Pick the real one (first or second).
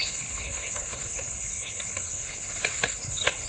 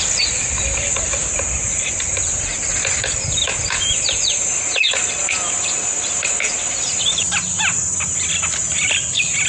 second